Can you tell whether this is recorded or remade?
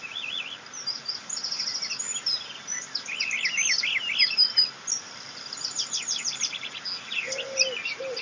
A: recorded